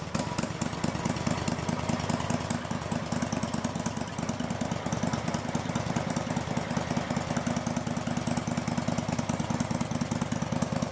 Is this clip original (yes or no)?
yes